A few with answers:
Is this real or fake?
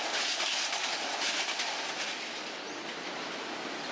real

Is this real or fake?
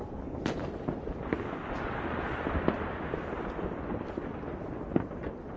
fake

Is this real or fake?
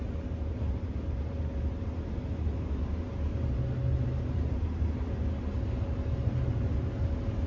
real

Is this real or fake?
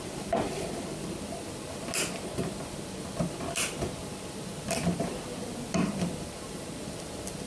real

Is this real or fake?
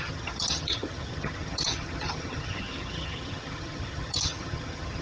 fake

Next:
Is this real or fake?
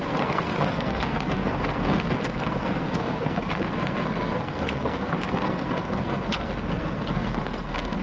fake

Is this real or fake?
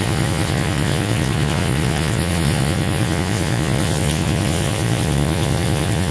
fake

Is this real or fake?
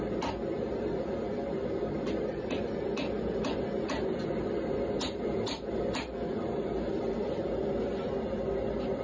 real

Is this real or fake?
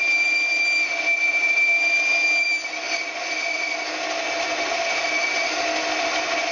real